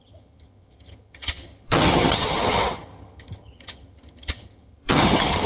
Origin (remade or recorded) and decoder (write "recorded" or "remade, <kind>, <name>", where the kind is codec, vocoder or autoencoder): remade, vocoder, HiFi-GAN